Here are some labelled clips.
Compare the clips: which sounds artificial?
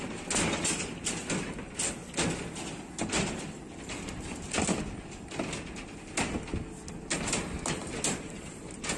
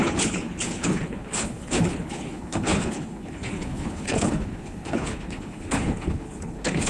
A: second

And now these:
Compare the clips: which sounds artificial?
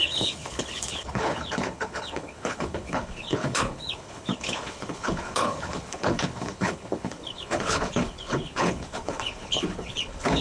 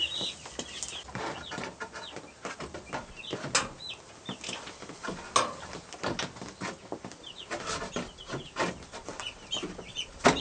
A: first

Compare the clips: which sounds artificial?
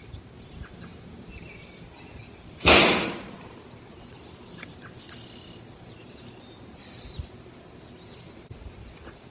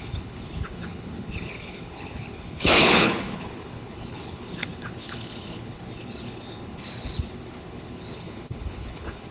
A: second